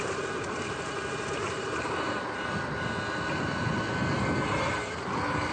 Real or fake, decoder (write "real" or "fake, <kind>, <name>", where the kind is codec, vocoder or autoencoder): real